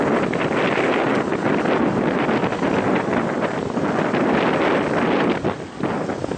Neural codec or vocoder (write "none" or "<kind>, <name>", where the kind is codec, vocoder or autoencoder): none